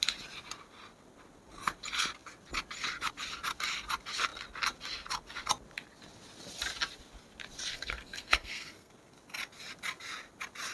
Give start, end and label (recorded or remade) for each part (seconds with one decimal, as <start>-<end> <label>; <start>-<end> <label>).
0.0-7.7 recorded; 7.7-8.9 remade; 8.9-10.7 recorded